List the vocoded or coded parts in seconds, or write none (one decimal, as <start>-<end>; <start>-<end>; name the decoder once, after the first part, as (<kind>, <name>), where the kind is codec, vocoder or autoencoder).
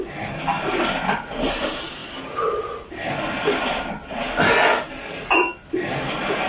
none